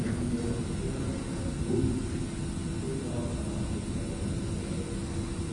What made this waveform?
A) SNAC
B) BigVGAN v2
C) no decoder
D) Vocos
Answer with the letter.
C